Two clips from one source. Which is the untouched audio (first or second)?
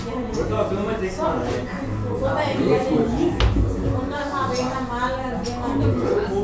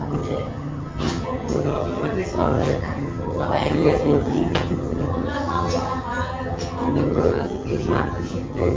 first